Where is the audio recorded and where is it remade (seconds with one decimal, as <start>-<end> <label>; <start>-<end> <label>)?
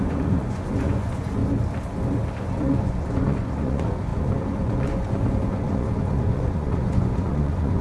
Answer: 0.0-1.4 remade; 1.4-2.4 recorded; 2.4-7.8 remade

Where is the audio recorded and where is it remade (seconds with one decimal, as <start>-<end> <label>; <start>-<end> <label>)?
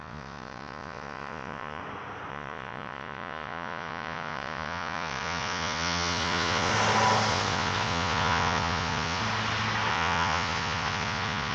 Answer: 0.0-1.8 remade; 1.8-2.3 recorded; 2.3-6.7 remade; 6.7-7.3 recorded; 7.3-9.2 remade; 9.2-9.9 recorded; 9.9-11.5 remade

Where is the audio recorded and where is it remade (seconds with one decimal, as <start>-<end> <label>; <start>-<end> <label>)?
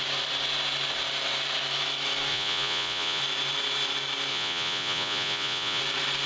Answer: 0.0-2.3 recorded; 2.3-3.2 remade; 3.2-4.3 recorded; 4.3-5.8 remade; 5.8-6.3 recorded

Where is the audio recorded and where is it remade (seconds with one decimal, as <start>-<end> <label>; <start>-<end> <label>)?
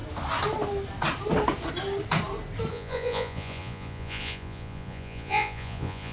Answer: 0.0-2.7 recorded; 2.7-6.1 remade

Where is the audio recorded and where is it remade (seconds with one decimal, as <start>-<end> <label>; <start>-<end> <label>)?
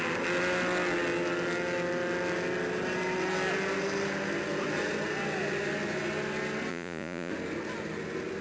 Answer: 0.0-6.7 recorded; 6.7-7.3 remade; 7.3-8.4 recorded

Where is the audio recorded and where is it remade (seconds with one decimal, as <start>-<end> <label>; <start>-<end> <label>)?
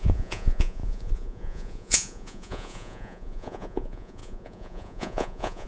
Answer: 0.0-5.7 remade